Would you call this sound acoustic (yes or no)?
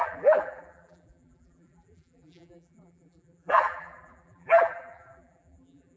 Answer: no